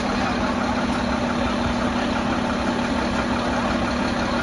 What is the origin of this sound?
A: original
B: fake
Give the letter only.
A